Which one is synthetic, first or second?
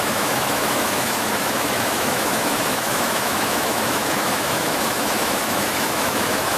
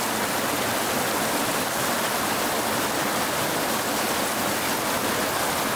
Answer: first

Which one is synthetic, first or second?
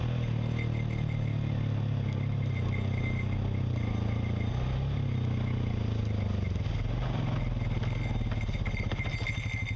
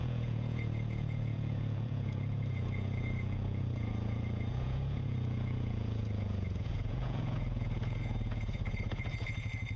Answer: second